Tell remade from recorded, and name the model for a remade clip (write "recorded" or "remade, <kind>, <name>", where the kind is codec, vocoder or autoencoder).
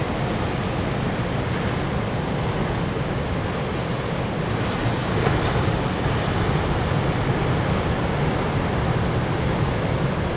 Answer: recorded